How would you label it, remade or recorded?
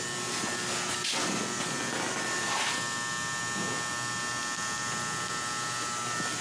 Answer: recorded